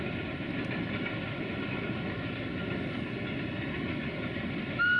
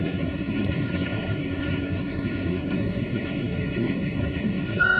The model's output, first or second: second